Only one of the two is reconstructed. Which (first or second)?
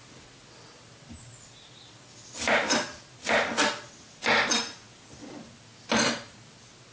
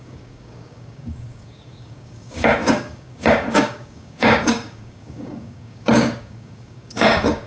second